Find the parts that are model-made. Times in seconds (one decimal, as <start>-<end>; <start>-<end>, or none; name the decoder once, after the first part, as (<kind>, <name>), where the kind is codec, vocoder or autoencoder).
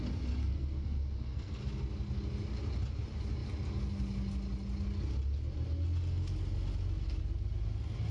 0.4-1.6 (codec, SNAC)